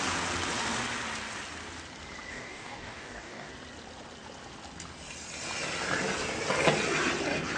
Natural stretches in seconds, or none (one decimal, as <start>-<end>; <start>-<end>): 0.0-2.3; 3.5-7.6